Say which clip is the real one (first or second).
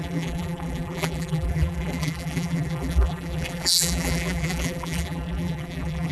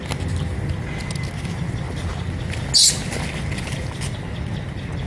second